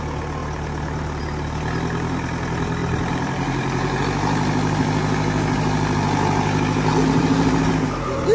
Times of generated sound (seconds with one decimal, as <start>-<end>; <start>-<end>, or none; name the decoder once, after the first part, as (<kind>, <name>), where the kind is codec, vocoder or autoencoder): 2.8-4.0 (vocoder, BigVGAN v2); 6.9-7.7